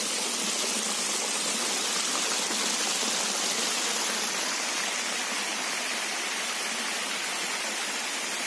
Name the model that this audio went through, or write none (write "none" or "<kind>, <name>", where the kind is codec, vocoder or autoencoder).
none